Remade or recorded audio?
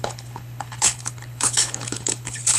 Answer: remade